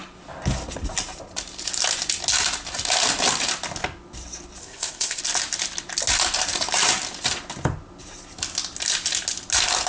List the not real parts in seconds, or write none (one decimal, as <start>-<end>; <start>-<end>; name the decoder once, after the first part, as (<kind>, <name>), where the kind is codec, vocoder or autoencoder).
4.6-5.2 (codec, ZipCodec)